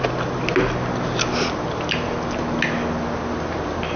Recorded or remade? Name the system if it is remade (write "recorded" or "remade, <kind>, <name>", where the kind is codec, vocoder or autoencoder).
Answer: recorded